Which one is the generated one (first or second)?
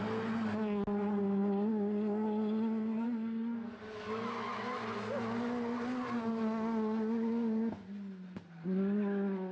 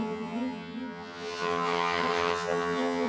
second